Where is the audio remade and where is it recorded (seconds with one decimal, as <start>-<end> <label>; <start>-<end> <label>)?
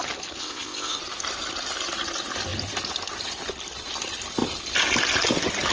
0.0-0.4 recorded; 0.4-1.0 remade; 1.0-5.7 recorded